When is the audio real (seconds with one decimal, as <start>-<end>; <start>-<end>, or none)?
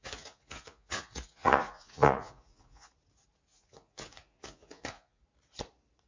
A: 2.9-3.5; 5.2-6.1